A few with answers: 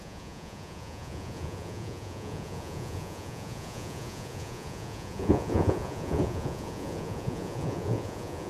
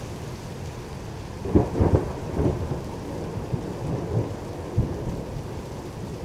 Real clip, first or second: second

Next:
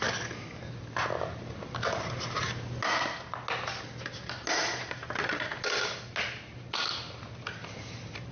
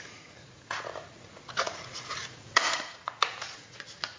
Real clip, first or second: first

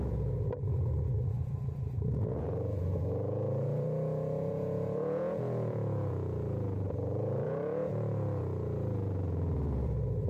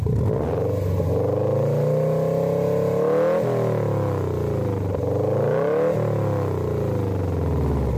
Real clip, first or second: second